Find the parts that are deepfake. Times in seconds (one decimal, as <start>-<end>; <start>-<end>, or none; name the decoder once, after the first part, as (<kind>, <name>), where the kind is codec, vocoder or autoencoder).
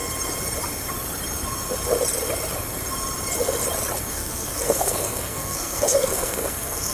4.1-6.9 (codec, SNAC)